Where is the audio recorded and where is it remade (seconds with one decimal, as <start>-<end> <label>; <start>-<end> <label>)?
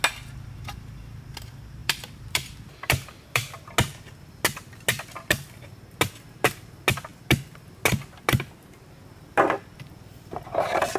0.0-1.8 recorded; 1.8-3.7 remade; 3.7-11.0 recorded